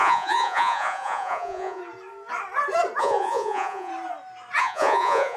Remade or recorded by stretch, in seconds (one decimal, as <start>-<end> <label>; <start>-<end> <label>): 0.0-1.8 remade; 1.8-3.0 recorded; 3.0-3.9 remade; 3.9-4.6 recorded; 4.6-5.4 remade